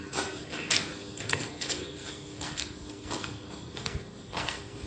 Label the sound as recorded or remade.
remade